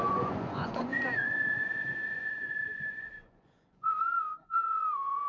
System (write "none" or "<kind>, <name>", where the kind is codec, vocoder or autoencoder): vocoder, Vocos